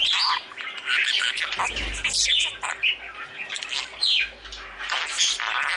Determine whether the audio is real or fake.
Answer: real